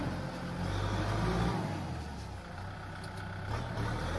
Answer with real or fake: real